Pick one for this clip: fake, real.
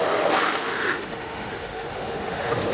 fake